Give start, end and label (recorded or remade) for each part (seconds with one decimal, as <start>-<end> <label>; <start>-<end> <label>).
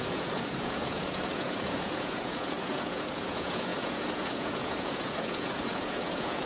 0.0-6.5 remade